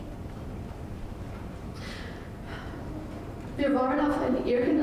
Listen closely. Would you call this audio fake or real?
fake